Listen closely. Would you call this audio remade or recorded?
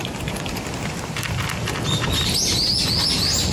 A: recorded